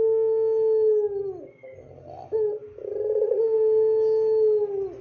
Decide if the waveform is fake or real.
real